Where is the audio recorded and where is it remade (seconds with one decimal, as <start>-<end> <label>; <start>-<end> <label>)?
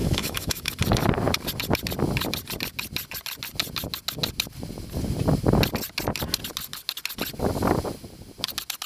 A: 0.0-0.7 remade; 0.7-8.9 recorded